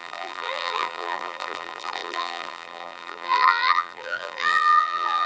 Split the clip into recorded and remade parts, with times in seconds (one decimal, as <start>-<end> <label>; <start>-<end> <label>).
0.0-5.3 remade